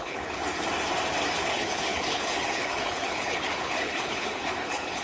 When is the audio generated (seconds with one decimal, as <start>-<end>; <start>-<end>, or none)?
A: 0.0-0.4; 1.4-5.0